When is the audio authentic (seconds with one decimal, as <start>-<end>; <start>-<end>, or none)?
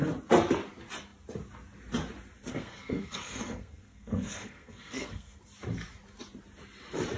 0.0-2.5; 5.4-7.2